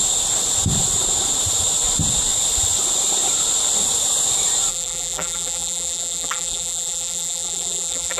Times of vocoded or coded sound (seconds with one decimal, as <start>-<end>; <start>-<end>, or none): 4.7-8.2